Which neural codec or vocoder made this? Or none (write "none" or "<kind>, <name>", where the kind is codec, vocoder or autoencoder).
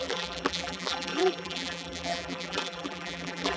vocoder, BigVGAN v2